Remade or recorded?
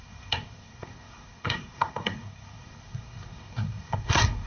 remade